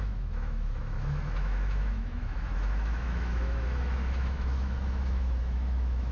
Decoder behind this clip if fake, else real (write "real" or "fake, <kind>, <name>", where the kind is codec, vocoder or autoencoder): fake, autoencoder, DAC-VAE